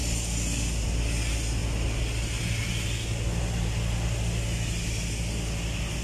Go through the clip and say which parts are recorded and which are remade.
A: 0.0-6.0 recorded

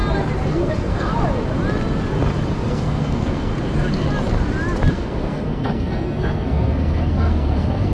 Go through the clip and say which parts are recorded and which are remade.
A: 0.0-0.5 recorded; 0.5-1.1 remade; 1.1-2.7 recorded; 2.7-3.5 remade; 3.5-4.9 recorded; 4.9-7.9 remade

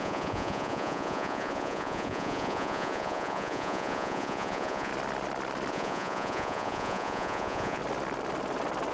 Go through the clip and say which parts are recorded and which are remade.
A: 0.0-4.9 remade; 4.9-5.7 recorded; 5.7-7.8 remade; 7.8-8.9 recorded

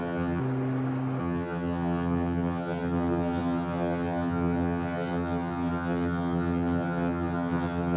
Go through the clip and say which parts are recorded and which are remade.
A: 0.0-0.4 remade; 0.4-1.2 recorded; 1.2-8.0 remade

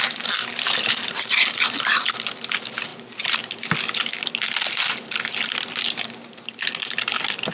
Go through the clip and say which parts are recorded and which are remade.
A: 0.0-2.9 recorded; 2.9-3.6 remade; 3.6-7.5 recorded

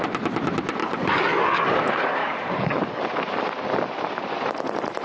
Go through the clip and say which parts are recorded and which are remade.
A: 0.0-0.8 recorded; 0.8-1.8 remade; 1.8-2.2 recorded; 2.2-3.0 remade; 3.0-5.0 recorded

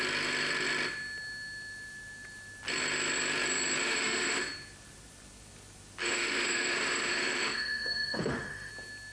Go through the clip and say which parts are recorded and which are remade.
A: 0.0-3.8 recorded; 3.8-4.4 remade; 4.4-6.0 recorded; 6.0-8.7 remade; 8.7-9.1 recorded